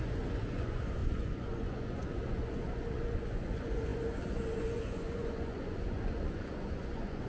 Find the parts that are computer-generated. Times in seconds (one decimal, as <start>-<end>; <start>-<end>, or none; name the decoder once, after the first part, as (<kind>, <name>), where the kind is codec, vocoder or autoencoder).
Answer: 0.0-7.3 (vocoder, Vocos)